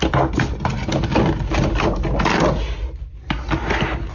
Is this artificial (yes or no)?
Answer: no